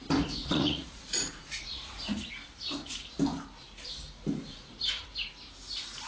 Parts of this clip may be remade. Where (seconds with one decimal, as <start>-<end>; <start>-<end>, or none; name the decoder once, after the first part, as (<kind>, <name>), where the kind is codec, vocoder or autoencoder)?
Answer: 0.4-2.3 (vocoder, Vocos); 4.5-5.1